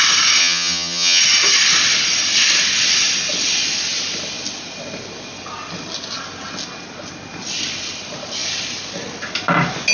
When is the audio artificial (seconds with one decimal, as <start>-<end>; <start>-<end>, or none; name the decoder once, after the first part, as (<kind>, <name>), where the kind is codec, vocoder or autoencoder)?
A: 0.4-1.2 (vocoder, HiFi-GAN)